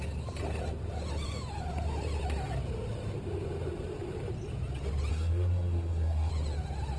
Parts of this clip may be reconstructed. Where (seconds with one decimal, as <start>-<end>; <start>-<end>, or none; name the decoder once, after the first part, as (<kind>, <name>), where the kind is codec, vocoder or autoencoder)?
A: 5.1-6.3 (codec, SNAC)